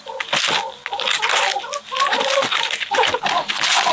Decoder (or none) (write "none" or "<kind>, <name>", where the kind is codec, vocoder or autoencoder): none